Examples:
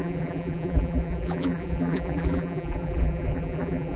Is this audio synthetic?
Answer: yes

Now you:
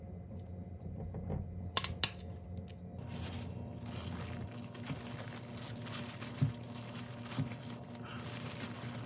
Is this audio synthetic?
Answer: no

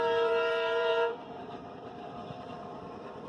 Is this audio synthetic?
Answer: yes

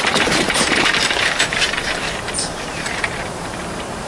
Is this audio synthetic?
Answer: yes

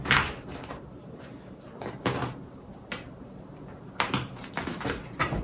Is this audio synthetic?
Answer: yes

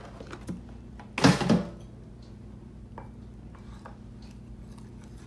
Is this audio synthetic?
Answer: no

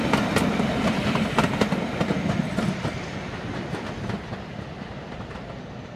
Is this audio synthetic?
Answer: no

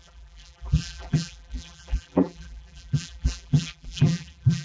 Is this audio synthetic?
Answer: yes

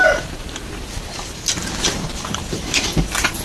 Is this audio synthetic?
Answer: yes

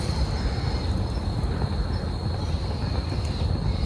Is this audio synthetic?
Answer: no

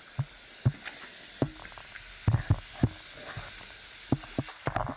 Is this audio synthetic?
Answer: no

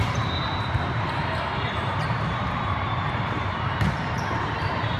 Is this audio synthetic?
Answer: yes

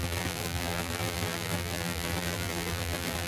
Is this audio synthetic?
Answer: yes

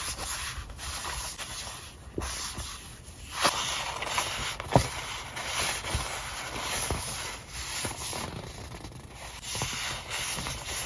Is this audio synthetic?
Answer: no